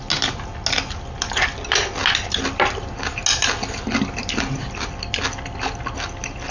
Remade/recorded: recorded